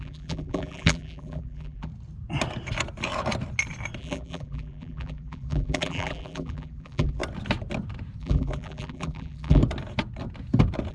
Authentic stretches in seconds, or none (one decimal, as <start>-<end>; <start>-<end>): 1.9-4.0; 7.2-8.2; 9.6-10.9